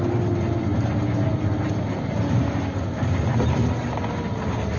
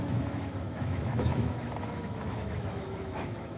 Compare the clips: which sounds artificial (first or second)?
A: second